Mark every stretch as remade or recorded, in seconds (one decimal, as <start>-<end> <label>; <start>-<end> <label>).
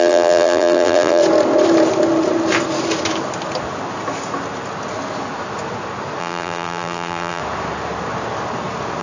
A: 0.0-1.2 remade; 1.2-6.2 recorded; 6.2-7.4 remade; 7.4-9.0 recorded